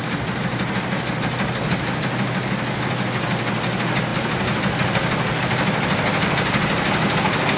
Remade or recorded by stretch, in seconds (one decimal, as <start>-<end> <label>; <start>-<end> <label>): 0.0-7.6 recorded

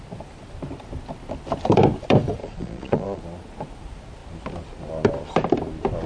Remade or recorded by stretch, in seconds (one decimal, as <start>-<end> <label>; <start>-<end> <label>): 0.0-2.4 recorded; 2.4-3.2 remade; 3.2-6.1 recorded

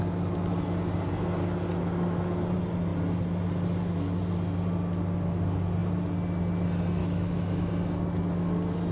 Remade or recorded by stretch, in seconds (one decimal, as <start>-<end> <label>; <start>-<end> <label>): 0.0-7.0 recorded; 7.0-7.7 remade; 7.7-8.9 recorded